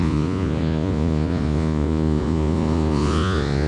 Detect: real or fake fake